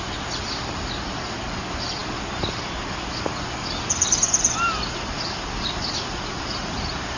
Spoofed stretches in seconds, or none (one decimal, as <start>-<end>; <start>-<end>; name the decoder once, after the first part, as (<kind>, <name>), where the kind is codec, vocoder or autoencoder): none

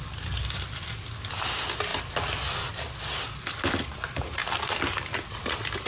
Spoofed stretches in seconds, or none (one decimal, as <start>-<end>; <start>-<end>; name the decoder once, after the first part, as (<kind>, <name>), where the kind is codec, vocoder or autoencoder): none

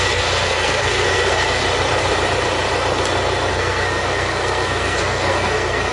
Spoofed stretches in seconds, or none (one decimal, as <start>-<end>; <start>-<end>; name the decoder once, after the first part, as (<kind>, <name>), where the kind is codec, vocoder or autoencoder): 0.0-1.6 (codec, SNAC); 3.5-5.9

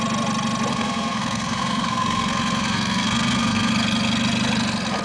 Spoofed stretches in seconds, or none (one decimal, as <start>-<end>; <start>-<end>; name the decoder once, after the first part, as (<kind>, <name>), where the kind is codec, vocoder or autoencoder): 0.7-3.7 (codec, SNAC)